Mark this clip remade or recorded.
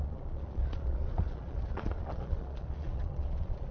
remade